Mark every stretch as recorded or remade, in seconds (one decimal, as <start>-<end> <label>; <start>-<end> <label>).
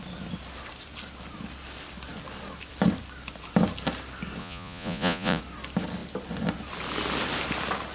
0.0-4.4 recorded; 4.4-5.4 remade; 5.4-7.9 recorded